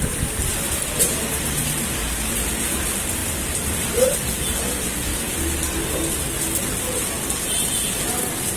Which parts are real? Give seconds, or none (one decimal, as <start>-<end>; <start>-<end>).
0.0-3.2; 4.4-8.6

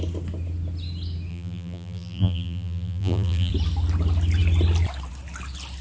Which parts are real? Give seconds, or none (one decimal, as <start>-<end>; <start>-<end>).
0.0-1.3; 3.5-5.8

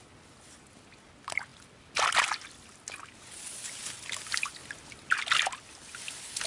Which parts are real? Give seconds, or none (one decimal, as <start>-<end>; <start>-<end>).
0.0-6.5

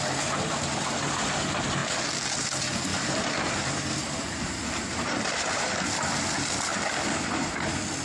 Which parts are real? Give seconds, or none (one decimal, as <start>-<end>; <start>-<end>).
0.0-2.9; 5.7-6.7; 7.5-8.0

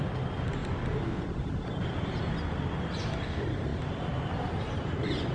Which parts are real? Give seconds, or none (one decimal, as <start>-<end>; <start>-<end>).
0.0-5.3

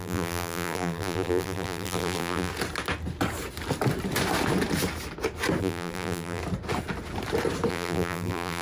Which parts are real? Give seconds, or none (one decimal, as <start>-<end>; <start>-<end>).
2.5-5.6; 6.4-7.7

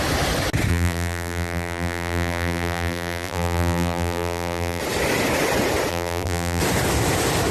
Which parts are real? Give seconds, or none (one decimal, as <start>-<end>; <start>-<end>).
0.0-0.7; 4.8-5.9; 6.6-7.5